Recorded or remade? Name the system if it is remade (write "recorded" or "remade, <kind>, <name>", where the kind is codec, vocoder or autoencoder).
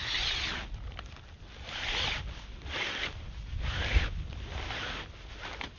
recorded